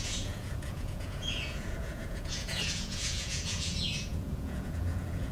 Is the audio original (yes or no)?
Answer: no